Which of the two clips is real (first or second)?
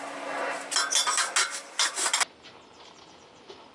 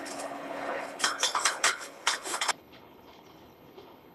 first